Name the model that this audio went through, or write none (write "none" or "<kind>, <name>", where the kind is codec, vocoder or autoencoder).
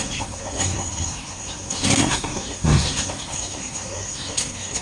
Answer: codec, SNAC